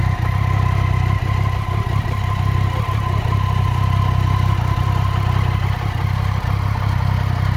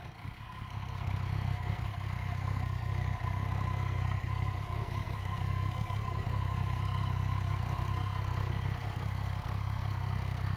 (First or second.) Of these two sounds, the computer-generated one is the second